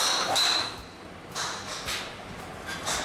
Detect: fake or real real